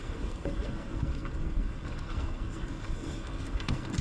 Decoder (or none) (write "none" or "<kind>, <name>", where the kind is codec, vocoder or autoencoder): codec, SNAC